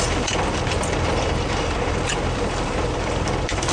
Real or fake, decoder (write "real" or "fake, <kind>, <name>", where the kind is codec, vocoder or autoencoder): fake, vocoder, BigVGAN v2